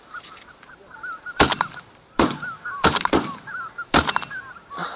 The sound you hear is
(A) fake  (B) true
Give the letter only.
A